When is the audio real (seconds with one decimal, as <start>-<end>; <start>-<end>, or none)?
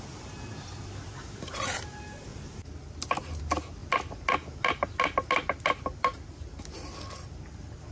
0.0-7.9